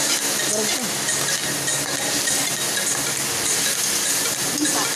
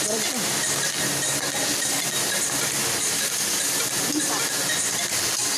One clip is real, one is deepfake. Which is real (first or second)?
first